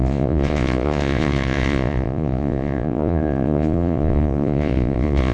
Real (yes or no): no